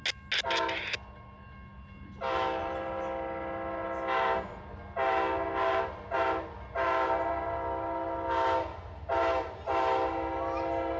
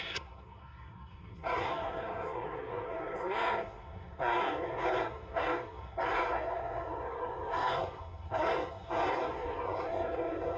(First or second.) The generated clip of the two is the second